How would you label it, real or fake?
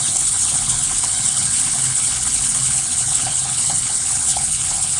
fake